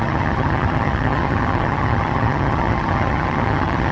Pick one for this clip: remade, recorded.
remade